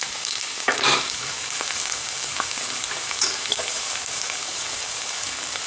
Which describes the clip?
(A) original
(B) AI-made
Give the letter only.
B